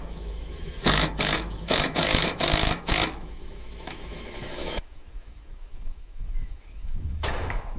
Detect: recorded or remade remade